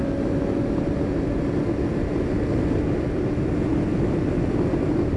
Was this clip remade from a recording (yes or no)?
no